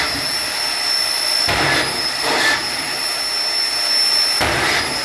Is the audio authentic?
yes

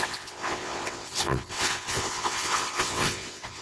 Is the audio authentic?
no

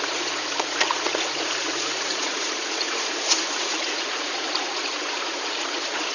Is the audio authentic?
no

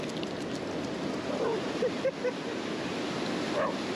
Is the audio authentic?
no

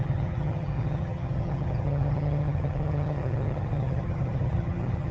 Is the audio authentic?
no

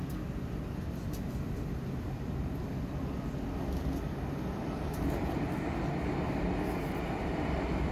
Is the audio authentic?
yes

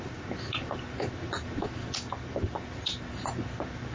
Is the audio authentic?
no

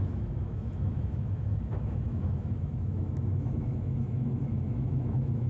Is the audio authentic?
no